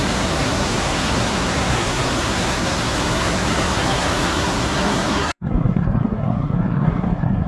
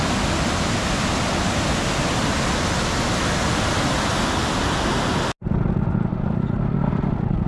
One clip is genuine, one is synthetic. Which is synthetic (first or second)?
first